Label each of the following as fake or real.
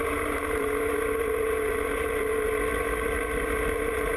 fake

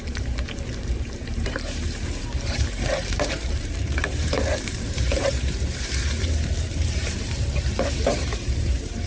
fake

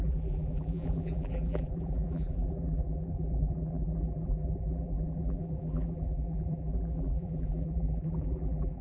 fake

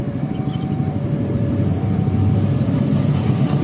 fake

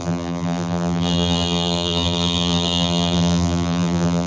fake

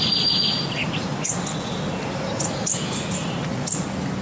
real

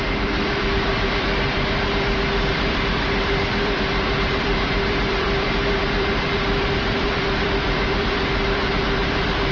fake